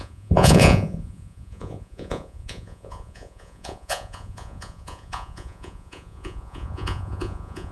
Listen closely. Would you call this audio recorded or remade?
remade